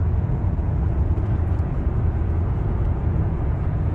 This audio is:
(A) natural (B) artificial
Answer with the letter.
B